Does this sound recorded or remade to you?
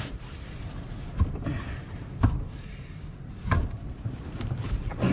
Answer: remade